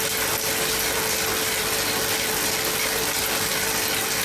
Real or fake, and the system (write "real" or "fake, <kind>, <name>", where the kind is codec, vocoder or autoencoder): real